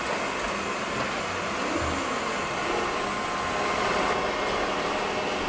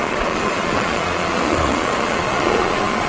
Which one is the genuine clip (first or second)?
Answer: first